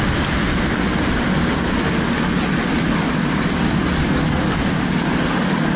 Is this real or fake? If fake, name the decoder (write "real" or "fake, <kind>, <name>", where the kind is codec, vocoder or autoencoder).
real